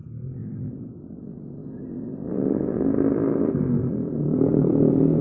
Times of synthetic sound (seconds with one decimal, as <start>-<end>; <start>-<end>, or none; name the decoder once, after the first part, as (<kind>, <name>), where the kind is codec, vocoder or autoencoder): none